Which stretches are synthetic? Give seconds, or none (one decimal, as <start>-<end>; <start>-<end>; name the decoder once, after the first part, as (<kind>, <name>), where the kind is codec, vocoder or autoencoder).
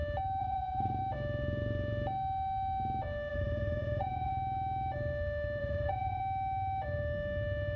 0.4-1.0 (vocoder, Vocos); 3.3-4.3; 5.6-6.2